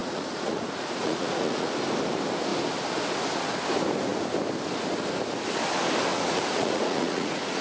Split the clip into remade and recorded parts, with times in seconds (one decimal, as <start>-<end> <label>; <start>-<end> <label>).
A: 0.0-1.7 remade; 1.7-6.1 recorded; 6.1-7.6 remade